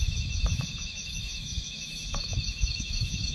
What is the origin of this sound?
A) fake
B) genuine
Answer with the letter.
A